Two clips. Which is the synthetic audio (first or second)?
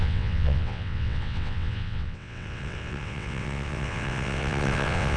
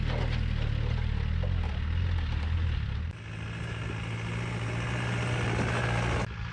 first